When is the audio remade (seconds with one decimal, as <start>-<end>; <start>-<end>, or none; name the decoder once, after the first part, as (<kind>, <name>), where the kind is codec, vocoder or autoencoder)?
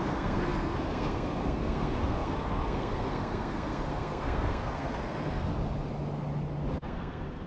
0.0-5.5 (codec, SNAC); 6.7-7.5